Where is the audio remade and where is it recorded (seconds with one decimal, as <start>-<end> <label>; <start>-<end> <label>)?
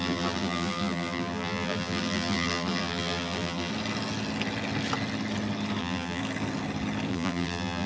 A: 0.0-3.7 remade; 3.7-5.8 recorded; 5.8-6.2 remade; 6.2-7.1 recorded; 7.1-7.9 remade